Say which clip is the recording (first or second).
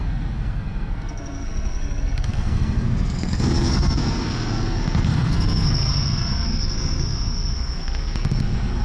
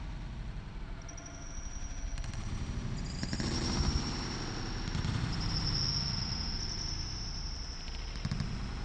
second